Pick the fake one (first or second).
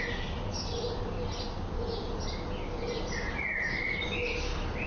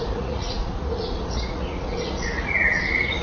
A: second